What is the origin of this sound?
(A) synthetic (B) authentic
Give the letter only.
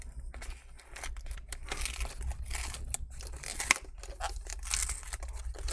B